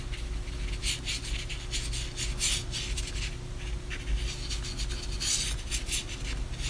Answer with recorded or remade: recorded